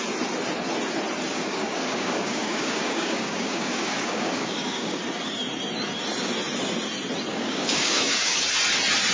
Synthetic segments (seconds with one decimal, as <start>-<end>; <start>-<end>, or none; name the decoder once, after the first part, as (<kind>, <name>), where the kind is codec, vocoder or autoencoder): 1.3-5.0 (codec, DAC); 7.3-8.5